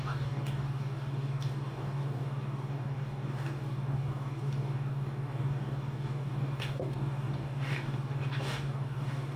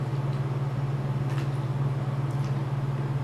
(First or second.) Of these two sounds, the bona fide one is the second